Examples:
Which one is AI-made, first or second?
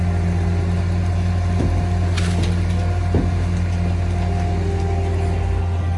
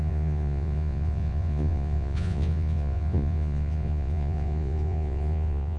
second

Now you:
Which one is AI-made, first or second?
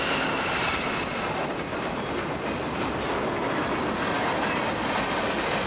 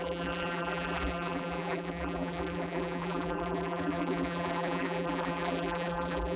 second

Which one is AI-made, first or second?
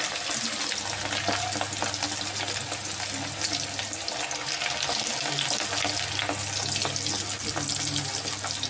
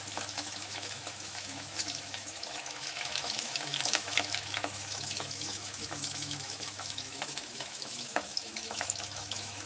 second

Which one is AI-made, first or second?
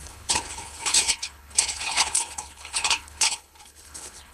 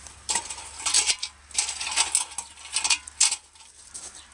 first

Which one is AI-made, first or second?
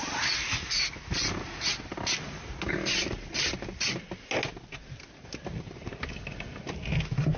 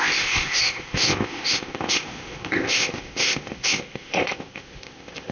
second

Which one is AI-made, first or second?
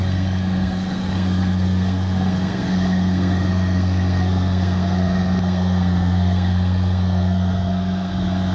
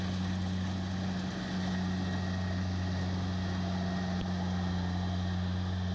first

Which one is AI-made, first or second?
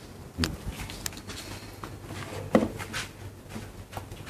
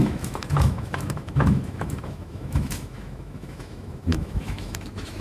second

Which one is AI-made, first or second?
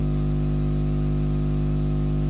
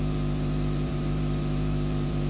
second